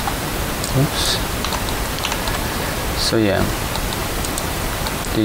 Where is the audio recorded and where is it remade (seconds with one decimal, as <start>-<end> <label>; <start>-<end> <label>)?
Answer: 0.0-4.0 recorded; 4.0-4.7 remade; 4.7-5.2 recorded